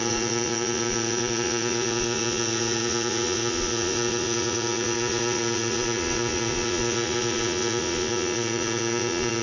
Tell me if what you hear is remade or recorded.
remade